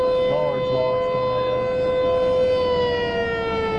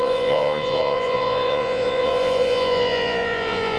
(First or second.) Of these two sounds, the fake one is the second